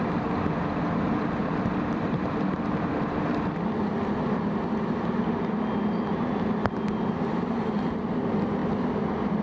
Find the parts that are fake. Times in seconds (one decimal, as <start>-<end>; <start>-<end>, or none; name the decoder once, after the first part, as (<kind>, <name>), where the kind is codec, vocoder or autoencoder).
1.4-3.7 (vocoder, BigVGAN v2)